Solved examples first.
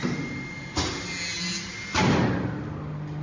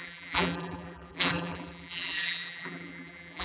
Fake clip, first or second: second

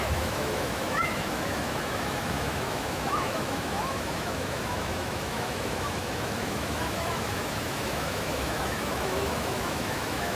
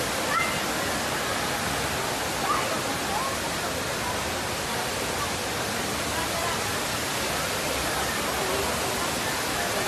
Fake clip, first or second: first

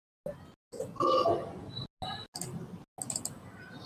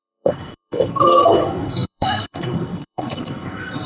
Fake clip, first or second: second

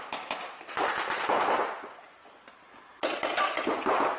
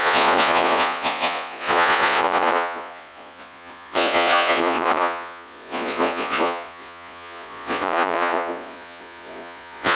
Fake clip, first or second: second